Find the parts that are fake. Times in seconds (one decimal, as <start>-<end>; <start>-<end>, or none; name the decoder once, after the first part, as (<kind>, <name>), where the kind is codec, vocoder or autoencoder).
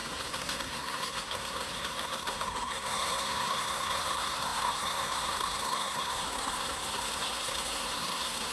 0.0-8.5 (codec, SNAC)